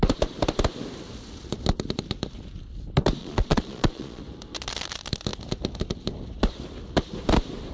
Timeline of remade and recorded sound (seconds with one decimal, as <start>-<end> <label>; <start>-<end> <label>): 0.0-3.2 recorded; 3.2-4.2 remade; 4.2-7.7 recorded